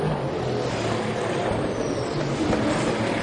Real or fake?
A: real